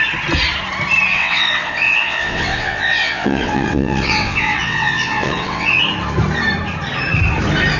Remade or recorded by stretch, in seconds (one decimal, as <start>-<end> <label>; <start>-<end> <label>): 0.0-1.1 recorded; 1.1-5.8 remade; 5.8-7.8 recorded